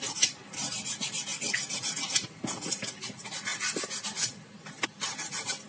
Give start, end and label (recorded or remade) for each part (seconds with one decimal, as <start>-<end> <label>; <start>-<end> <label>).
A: 0.0-5.7 recorded